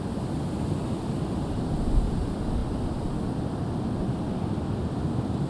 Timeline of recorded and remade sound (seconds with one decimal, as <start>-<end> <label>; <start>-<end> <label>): 0.0-5.5 recorded